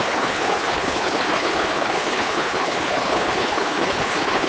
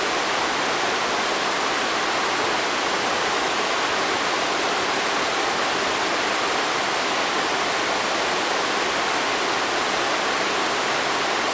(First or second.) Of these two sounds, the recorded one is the second